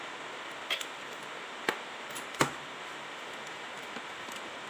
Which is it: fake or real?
real